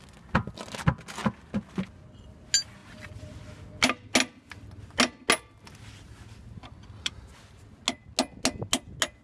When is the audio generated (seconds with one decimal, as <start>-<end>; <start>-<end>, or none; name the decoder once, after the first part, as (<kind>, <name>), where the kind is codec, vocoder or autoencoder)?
none